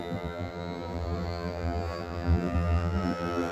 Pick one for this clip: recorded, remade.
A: remade